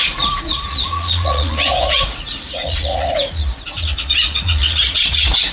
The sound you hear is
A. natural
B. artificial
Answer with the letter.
B